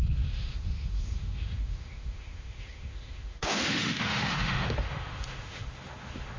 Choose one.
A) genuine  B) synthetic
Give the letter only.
B